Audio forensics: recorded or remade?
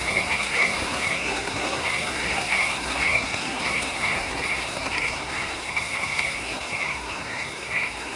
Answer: remade